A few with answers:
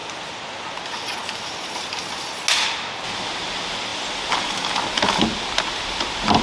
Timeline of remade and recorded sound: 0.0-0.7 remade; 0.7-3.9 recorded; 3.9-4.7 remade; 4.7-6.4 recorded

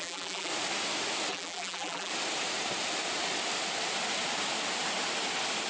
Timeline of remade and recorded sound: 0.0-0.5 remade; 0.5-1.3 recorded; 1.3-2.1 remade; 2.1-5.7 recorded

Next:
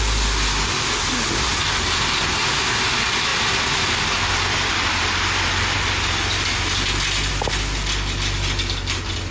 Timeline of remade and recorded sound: 0.0-3.3 recorded; 3.3-7.3 remade; 7.3-9.3 recorded

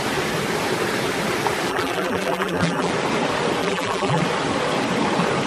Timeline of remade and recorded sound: 0.0-1.7 recorded; 1.7-2.9 remade; 2.9-3.6 recorded; 3.6-4.2 remade; 4.2-5.5 recorded

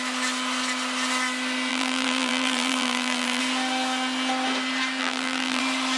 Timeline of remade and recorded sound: 0.0-1.7 recorded; 1.7-3.4 remade; 3.4-5.0 recorded; 5.0-5.6 remade; 5.6-6.0 recorded